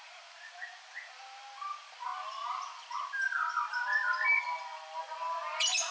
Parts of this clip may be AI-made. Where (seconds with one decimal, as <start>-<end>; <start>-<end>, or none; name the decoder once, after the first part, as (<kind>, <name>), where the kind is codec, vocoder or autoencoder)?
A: none